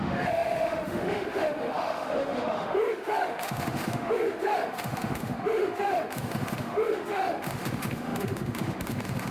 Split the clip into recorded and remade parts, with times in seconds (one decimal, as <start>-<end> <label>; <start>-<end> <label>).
0.0-9.3 remade